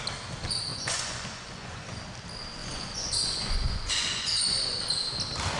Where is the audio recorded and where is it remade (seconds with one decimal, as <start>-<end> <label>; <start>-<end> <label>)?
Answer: 0.0-0.7 recorded; 0.7-2.0 remade; 2.0-2.6 recorded; 2.6-4.8 remade; 4.8-5.6 recorded